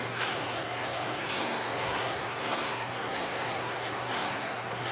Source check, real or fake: fake